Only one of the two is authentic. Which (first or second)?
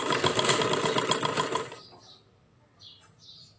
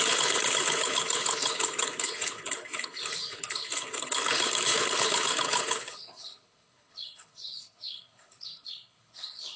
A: first